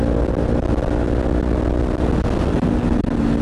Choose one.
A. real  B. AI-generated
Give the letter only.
A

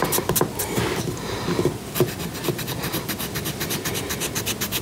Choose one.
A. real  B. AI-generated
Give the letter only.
A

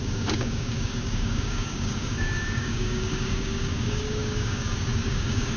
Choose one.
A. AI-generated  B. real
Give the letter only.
A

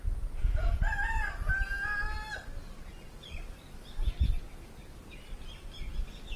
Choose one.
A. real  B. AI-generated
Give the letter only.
A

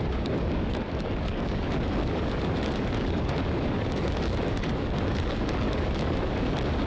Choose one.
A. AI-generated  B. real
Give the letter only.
A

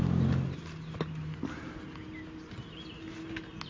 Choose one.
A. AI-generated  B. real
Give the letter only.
B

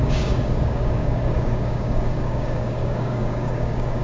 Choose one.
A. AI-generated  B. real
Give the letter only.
A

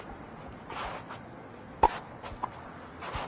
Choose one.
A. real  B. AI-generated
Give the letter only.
A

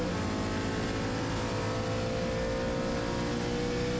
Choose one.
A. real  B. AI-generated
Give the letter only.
A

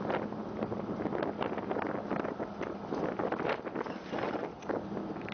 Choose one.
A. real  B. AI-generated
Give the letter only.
A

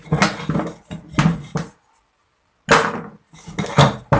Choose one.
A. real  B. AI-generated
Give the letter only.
A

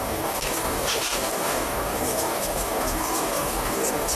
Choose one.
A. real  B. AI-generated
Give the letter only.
B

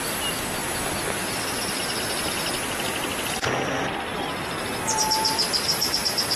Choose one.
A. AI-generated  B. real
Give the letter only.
B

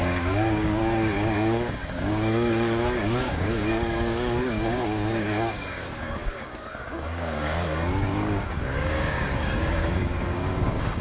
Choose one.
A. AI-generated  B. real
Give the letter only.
A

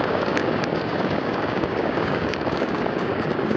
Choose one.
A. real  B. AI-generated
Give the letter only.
B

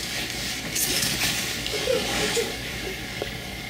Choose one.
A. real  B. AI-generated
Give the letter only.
B